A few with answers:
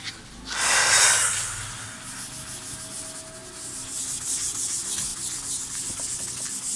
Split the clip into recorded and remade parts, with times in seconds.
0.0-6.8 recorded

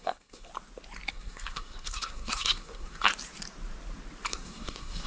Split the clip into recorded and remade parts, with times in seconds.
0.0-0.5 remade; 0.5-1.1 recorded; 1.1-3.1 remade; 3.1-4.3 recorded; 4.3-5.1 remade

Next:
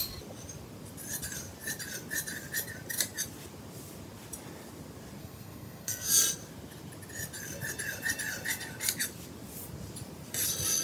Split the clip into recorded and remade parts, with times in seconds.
0.0-5.2 recorded; 5.2-6.1 remade; 6.1-10.8 recorded

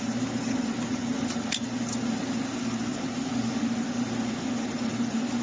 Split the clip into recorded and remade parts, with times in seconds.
0.0-5.4 recorded

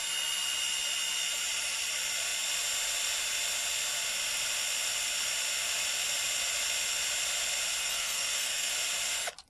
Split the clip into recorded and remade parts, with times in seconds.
0.0-7.8 recorded; 7.8-8.7 remade; 8.7-9.5 recorded

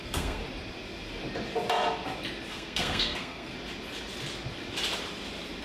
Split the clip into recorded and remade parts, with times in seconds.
0.0-0.4 remade; 0.4-2.5 recorded; 2.5-3.5 remade; 3.5-5.6 recorded

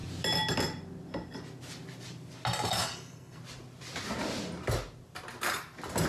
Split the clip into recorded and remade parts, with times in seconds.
0.0-2.7 recorded; 2.7-3.4 remade; 3.4-6.1 recorded

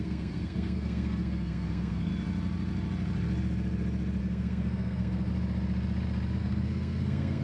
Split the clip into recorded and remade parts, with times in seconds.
0.0-2.1 remade; 2.1-4.2 recorded; 4.2-5.3 remade; 5.3-6.4 recorded; 6.4-7.4 remade